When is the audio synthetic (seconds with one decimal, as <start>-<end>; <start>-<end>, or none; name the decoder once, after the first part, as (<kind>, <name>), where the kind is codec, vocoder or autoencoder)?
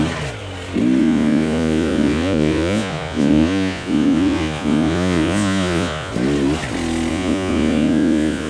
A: 1.0-6.1 (vocoder, Vocos); 7.1-8.5